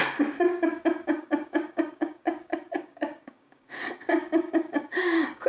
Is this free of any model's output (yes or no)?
no